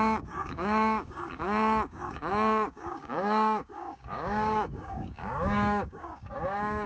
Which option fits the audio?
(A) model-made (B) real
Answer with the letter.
A